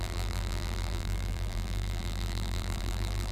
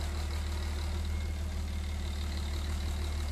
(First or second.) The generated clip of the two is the first